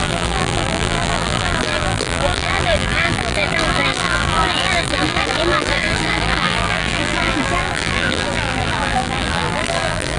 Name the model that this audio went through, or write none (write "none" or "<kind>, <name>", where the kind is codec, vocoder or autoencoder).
vocoder, BigVGAN v2